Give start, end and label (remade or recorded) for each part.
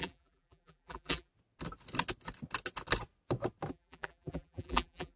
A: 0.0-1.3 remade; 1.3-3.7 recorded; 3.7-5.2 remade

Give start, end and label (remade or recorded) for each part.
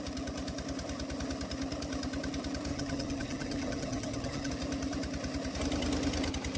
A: 0.0-2.7 recorded; 2.7-4.5 remade; 4.5-6.6 recorded